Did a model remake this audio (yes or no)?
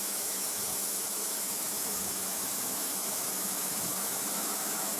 yes